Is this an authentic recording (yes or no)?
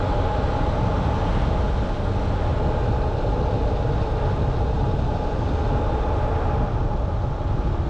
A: yes